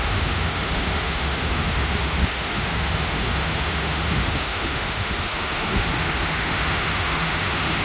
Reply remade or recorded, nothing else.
remade